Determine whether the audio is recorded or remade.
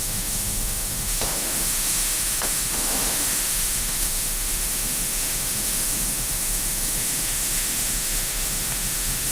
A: remade